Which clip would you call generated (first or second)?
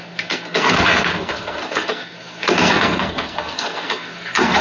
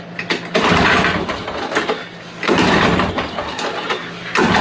first